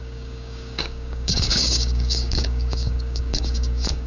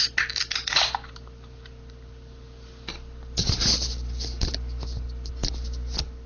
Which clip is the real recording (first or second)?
second